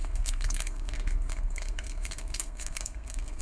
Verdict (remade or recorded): remade